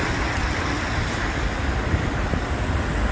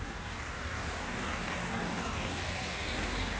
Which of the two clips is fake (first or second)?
second